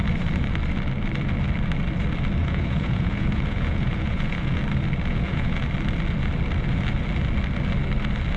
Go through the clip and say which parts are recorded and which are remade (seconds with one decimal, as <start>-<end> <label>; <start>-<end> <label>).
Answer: 0.0-2.4 recorded; 2.4-4.6 remade; 4.6-5.1 recorded; 5.1-5.6 remade; 5.6-8.4 recorded